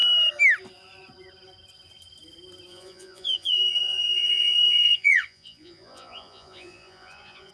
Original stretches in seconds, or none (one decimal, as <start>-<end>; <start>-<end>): 0.0-2.7